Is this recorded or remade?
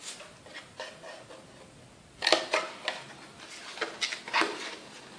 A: recorded